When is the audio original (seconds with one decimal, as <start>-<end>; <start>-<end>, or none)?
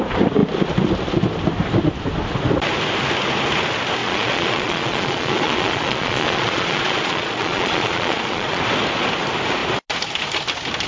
0.0-4.0; 8.6-10.9